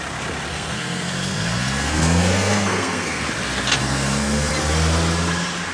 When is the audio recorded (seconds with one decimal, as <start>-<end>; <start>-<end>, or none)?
0.0-0.5; 3.3-3.8; 4.5-5.7